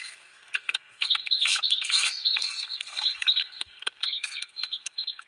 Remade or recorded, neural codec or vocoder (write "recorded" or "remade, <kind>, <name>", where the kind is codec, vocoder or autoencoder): remade, codec, SNAC